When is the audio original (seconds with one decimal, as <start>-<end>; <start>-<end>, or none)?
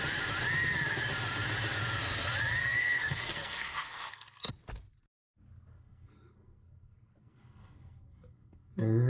0.0-2.6; 4.5-5.7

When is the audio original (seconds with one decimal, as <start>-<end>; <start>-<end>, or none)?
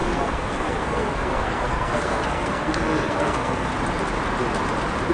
3.7-5.1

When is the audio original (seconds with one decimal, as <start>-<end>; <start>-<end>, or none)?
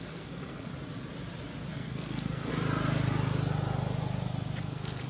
0.7-1.7; 2.5-4.6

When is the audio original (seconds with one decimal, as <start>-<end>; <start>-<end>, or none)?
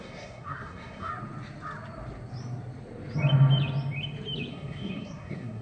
1.1-4.5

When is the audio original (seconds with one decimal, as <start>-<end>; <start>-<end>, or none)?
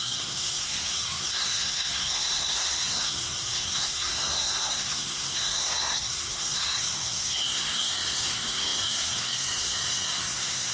none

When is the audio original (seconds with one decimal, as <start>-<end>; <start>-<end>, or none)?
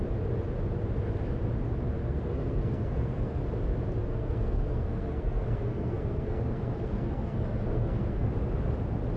0.0-2.0; 3.4-4.1; 8.3-9.2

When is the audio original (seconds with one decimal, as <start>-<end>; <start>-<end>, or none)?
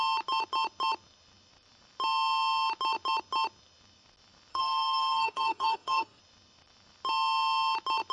0.0-4.5; 6.2-8.1